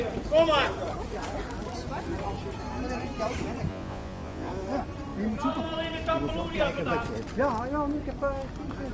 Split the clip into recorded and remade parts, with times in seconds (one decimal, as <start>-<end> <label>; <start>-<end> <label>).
0.0-3.7 recorded; 3.7-4.5 remade; 4.5-8.9 recorded